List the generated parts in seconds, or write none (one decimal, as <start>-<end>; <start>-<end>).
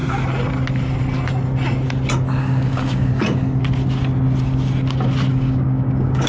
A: 2.4-3.1; 5.3-6.3